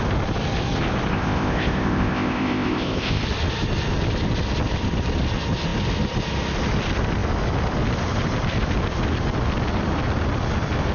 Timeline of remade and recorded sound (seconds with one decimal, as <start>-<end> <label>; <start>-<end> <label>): 0.0-1.1 recorded; 1.1-3.2 remade; 3.2-10.9 recorded